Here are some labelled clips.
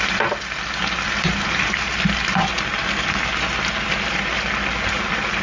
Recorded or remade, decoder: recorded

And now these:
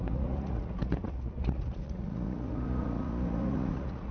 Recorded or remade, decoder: remade, vocoder, Vocos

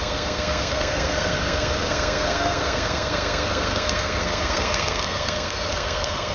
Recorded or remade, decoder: remade, codec, SNAC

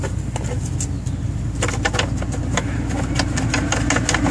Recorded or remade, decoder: recorded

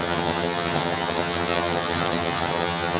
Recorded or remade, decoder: remade, vocoder, HiFi-GAN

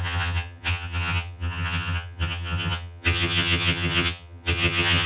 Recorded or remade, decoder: remade, vocoder, HiFi-GAN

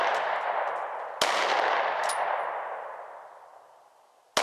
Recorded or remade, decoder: recorded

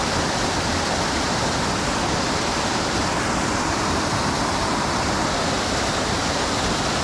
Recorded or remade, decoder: remade, vocoder, BigVGAN v2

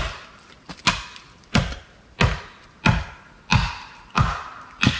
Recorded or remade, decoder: recorded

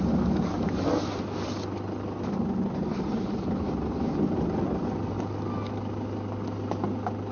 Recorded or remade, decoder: recorded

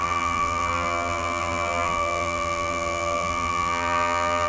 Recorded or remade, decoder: remade, vocoder, BigVGAN v2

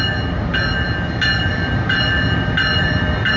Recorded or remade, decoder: recorded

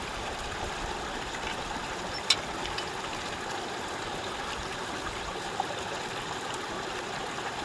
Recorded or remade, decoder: recorded